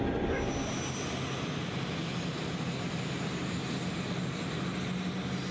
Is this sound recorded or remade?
recorded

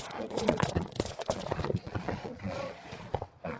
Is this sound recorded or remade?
remade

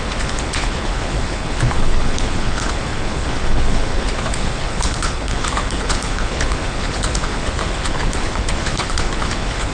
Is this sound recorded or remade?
remade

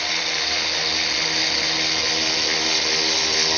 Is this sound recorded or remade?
recorded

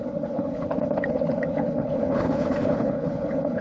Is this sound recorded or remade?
remade